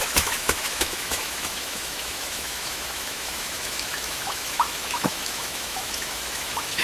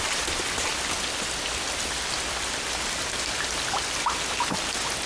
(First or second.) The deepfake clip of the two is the first